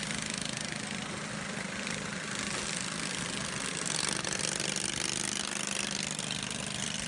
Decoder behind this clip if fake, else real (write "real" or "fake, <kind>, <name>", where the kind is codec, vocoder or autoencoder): real